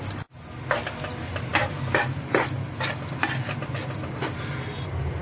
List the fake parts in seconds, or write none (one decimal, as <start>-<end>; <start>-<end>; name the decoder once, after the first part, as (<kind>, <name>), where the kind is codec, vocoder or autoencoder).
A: none

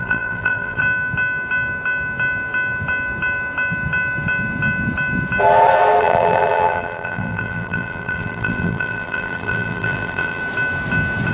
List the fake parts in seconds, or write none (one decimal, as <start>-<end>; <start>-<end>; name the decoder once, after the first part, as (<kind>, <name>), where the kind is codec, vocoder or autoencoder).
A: 0.0-0.8 (vocoder, BigVGAN v2); 6.0-10.4

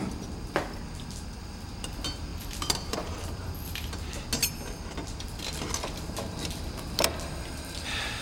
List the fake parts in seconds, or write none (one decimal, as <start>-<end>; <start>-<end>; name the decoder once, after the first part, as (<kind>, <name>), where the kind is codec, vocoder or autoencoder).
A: 2.3-3.9 (vocoder, BigVGAN v2)

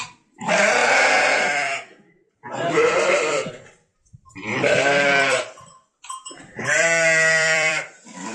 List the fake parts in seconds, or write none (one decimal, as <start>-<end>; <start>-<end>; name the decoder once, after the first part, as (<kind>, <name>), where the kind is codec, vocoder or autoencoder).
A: 0.0-0.8 (vocoder, BigVGAN v2); 2.7-8.3

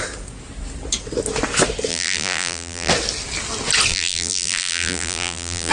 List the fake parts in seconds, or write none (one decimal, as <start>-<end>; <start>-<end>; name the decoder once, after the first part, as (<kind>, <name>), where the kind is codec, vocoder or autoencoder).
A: 1.9-2.9 (vocoder, BigVGAN v2); 3.9-5.7